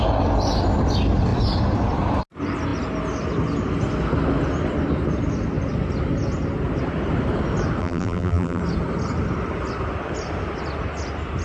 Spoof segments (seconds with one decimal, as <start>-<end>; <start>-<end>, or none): 7.8-8.6

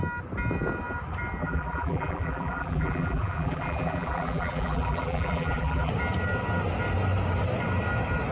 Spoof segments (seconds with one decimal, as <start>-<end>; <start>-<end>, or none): 1.4-5.9

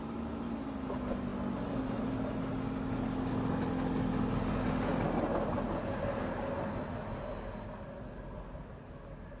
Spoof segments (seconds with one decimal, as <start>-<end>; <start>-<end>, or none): none

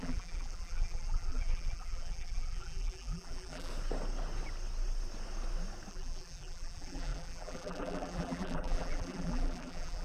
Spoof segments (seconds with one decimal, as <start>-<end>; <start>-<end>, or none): 0.0-3.7; 5.9-10.0